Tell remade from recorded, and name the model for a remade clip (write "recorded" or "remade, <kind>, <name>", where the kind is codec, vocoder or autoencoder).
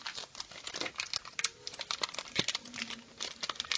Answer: recorded